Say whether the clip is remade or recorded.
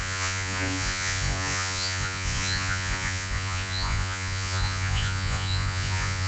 remade